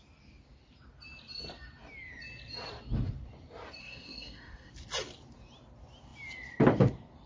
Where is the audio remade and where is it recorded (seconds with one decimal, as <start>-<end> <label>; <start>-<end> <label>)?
0.0-3.8 recorded; 3.8-4.7 remade; 4.7-7.3 recorded